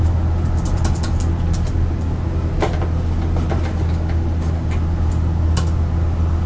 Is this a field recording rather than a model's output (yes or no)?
yes